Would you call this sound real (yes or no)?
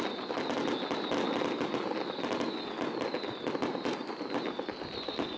yes